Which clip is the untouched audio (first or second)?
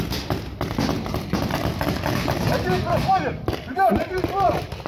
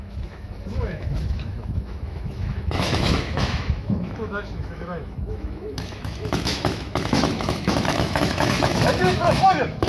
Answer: first